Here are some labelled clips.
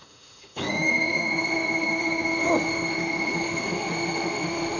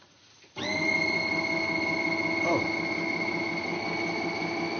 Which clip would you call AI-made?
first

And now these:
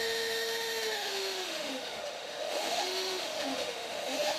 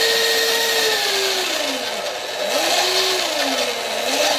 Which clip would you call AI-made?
first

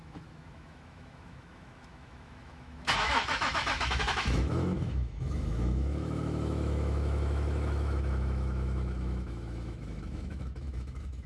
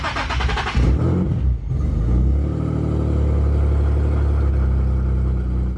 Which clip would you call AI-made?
first